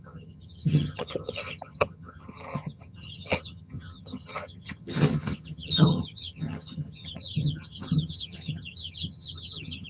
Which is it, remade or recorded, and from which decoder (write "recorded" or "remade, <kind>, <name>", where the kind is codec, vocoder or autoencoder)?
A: remade, vocoder, HiFi-GAN